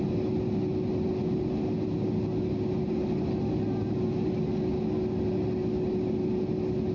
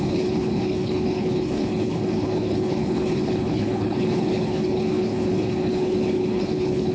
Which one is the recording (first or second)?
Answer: first